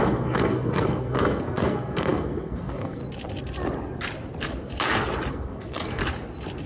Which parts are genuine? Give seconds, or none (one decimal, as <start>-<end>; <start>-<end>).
3.0-5.3; 6.0-6.7